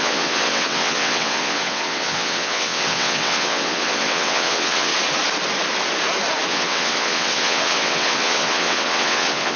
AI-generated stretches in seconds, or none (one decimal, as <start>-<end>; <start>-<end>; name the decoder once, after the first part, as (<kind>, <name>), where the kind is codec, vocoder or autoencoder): 0.0-4.9 (vocoder, WaveNeXt); 6.5-9.6